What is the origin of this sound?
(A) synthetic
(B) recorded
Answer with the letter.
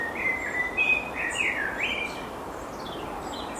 A